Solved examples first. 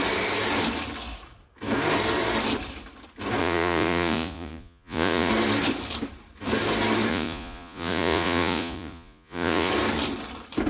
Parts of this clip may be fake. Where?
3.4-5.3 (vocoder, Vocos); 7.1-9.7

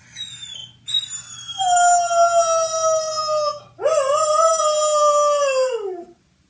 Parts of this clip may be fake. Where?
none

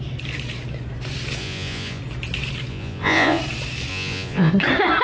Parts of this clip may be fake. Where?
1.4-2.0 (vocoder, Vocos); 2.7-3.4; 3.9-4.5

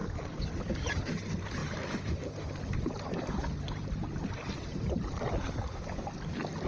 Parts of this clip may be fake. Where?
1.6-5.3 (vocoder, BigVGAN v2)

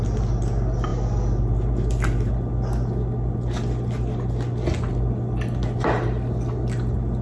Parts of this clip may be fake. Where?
none

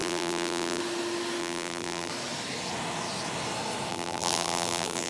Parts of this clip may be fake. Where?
0.0-0.8 (vocoder, BigVGAN v2); 1.4-2.1; 3.9-5.1

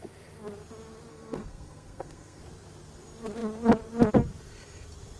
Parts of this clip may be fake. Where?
1.1-2.4 (codec, SNAC)

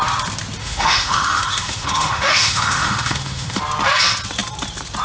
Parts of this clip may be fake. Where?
0.6-3.6 (autoencoder, DAC-VAE)